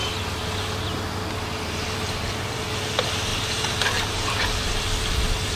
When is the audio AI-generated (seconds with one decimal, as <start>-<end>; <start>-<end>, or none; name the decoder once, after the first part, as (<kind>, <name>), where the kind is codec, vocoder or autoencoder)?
3.3-4.8 (vocoder, BigVGAN v2)